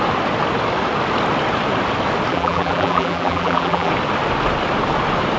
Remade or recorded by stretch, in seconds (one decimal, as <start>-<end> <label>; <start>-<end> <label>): 0.0-2.3 recorded; 2.3-3.9 remade; 3.9-5.4 recorded